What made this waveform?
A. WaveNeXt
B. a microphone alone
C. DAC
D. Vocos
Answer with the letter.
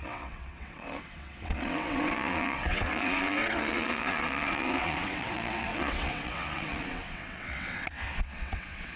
A